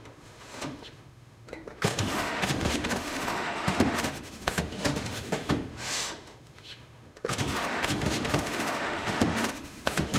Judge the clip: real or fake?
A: fake